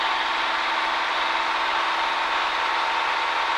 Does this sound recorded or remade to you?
recorded